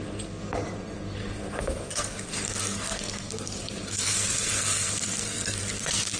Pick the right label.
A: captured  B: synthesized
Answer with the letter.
B